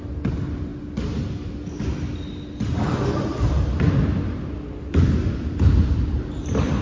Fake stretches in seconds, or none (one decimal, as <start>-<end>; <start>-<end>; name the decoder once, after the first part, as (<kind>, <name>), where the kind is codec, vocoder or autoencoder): none